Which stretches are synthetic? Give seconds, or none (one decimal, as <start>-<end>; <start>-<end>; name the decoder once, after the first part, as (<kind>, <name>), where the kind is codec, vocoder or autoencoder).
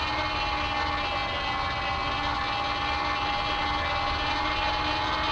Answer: none